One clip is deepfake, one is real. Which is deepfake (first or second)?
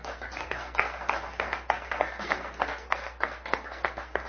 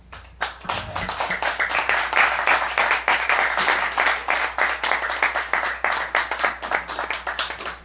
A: first